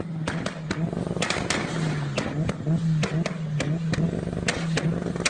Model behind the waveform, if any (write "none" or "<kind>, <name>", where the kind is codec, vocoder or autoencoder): none